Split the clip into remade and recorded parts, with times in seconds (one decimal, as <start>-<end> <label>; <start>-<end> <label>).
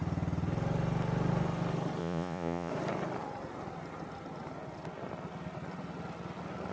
0.0-2.0 recorded; 2.0-2.7 remade; 2.7-6.7 recorded